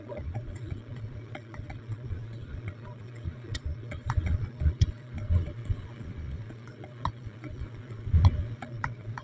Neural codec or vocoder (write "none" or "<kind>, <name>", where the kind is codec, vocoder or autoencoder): vocoder, Vocos